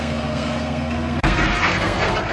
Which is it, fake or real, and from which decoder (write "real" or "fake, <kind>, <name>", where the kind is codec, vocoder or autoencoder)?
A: fake, codec, SNAC